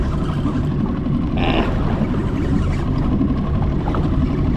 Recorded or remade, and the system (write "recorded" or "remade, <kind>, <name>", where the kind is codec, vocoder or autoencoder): recorded